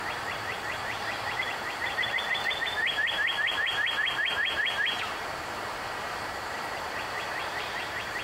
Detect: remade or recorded remade